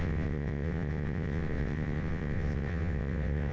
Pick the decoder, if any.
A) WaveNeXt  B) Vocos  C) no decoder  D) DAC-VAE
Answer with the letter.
A